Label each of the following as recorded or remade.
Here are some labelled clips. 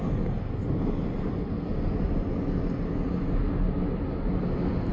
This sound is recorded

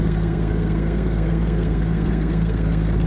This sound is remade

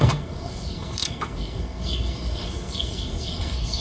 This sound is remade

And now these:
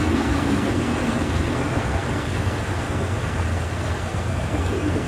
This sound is remade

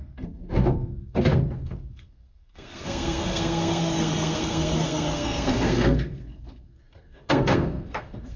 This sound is remade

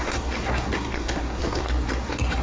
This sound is remade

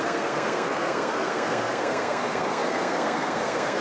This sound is remade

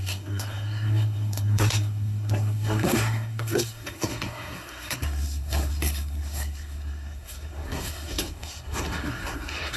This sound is remade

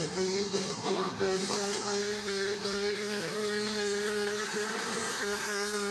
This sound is remade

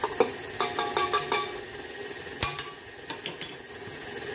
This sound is recorded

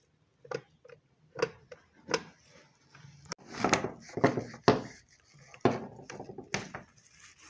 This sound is recorded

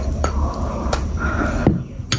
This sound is recorded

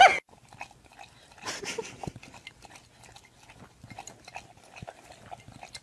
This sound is recorded